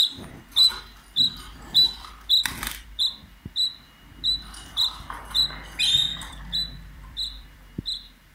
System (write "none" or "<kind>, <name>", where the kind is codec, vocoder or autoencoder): vocoder, BigVGAN v2